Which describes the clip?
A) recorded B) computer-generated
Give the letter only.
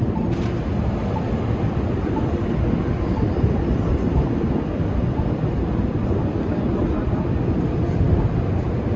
A